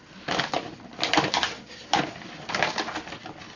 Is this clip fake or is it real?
real